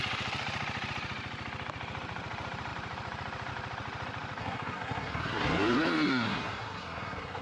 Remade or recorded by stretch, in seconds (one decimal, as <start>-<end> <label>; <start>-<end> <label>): 0.0-4.4 recorded; 4.4-7.4 remade